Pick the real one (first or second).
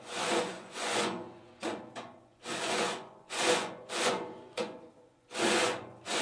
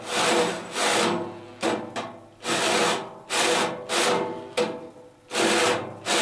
second